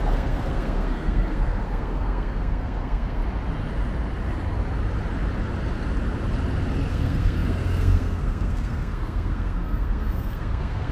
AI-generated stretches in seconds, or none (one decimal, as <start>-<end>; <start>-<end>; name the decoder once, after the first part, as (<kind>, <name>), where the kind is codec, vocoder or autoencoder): 0.0-3.2 (codec, SNAC); 6.9-10.9